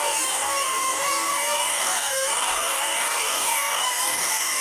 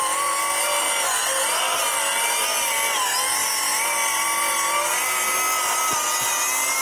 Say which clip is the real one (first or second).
second